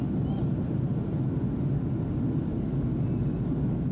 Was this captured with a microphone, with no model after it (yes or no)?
yes